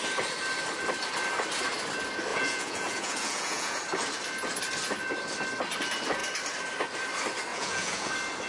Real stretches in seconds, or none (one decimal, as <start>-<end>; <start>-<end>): 0.0-2.3; 3.8-7.5; 8.1-8.5